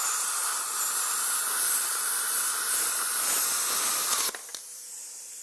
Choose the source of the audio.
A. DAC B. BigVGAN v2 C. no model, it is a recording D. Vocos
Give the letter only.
C